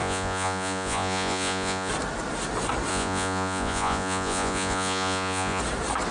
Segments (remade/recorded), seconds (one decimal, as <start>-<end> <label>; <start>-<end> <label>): 0.0-1.9 remade; 1.9-2.9 recorded; 2.9-5.6 remade; 5.6-6.1 recorded